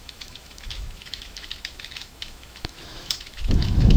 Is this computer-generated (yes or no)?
yes